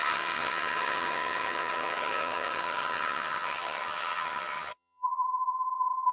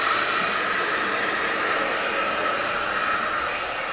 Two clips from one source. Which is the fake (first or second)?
first